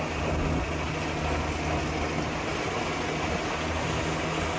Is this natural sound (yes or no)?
yes